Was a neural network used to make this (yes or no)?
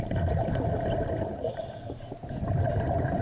no